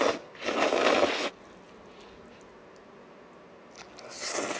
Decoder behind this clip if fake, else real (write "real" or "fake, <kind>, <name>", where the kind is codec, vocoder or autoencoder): real